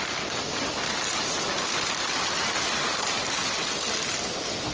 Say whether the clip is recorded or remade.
recorded